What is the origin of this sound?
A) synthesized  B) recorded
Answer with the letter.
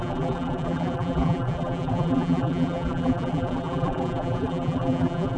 A